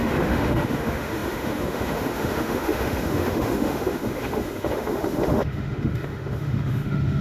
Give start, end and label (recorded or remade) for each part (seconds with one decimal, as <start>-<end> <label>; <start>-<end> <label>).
0.0-7.2 remade